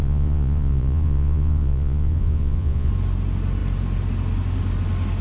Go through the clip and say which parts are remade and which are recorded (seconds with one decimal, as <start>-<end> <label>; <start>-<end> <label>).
0.0-2.9 remade; 2.9-5.2 recorded